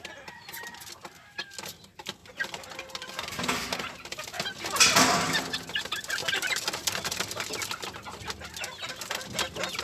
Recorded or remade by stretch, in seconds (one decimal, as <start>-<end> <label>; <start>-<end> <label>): 0.0-2.2 recorded; 2.2-2.8 remade; 2.8-6.2 recorded; 6.2-7.3 remade; 7.3-9.8 recorded